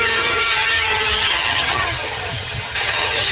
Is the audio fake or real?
fake